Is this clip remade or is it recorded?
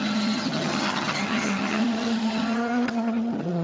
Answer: remade